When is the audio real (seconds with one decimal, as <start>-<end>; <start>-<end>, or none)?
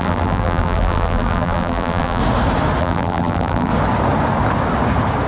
2.2-2.8; 3.7-5.3